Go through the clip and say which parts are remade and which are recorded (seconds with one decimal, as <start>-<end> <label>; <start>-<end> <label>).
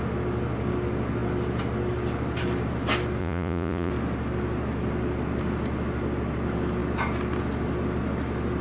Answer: 0.0-3.2 recorded; 3.2-3.9 remade; 3.9-8.6 recorded